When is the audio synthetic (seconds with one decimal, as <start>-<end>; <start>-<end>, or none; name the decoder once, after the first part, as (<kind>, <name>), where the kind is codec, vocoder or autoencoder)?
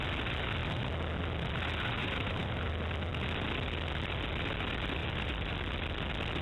2.0-2.7 (vocoder, BigVGAN v2); 5.0-5.5